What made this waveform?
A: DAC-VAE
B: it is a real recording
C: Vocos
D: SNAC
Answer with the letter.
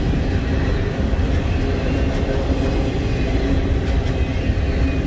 B